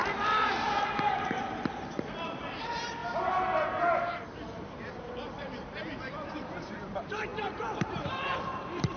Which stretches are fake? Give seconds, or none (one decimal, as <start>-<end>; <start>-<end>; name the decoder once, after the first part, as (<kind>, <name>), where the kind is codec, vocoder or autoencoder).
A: 0.0-3.0 (vocoder, BigVGAN v2); 3.9-9.0